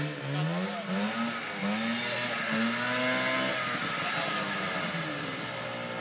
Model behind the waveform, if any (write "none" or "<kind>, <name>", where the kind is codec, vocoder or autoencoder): none